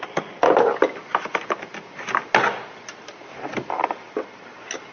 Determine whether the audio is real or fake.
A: real